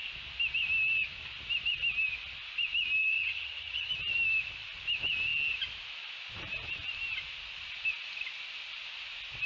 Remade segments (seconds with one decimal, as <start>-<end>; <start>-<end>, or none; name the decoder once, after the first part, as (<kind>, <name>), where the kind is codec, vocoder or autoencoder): 3.0-3.9 (vocoder, HiFi-GAN)